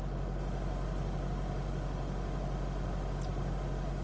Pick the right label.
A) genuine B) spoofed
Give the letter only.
A